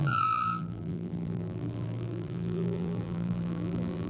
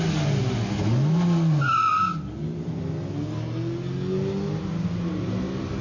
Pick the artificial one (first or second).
first